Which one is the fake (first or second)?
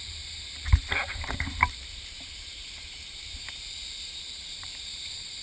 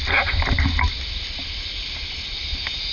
first